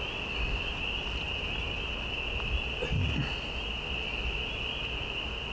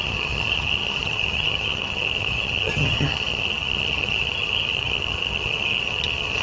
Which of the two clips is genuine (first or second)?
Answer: first